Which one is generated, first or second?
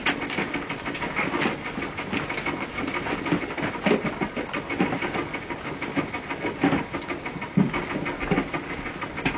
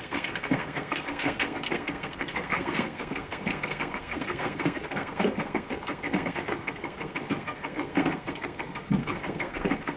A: second